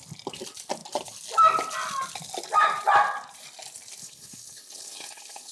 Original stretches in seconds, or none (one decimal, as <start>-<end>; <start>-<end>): 0.0-4.0